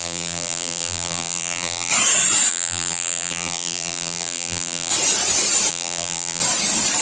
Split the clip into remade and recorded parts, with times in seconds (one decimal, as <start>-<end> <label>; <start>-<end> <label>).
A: 0.0-1.9 remade; 1.9-2.5 recorded; 2.5-4.9 remade; 4.9-5.7 recorded; 5.7-6.4 remade; 6.4-7.0 recorded